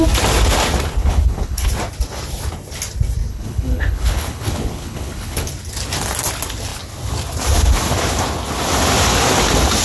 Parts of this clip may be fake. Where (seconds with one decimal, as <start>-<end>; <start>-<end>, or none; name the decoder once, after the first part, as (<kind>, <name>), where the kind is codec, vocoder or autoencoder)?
1.0-1.7 (codec, HILCodec); 3.3-5.5